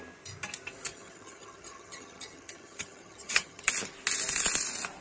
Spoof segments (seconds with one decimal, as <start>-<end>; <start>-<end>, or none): 0.9-3.7